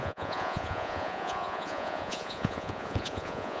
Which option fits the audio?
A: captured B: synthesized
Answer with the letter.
B